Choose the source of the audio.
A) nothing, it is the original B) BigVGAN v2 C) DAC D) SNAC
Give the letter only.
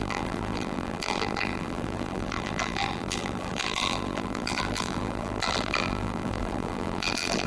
B